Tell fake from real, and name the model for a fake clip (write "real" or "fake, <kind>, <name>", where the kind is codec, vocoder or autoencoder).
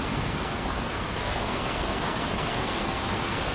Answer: fake, codec, SNAC